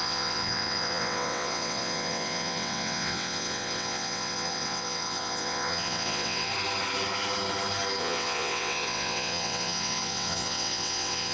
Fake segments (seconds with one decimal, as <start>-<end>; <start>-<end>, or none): 0.0-6.5; 8.0-11.3